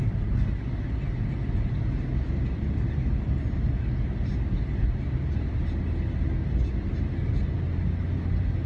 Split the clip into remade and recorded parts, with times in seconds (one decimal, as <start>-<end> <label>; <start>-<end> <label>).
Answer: 0.0-8.7 recorded